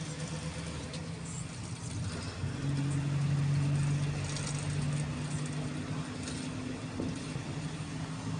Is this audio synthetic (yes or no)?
no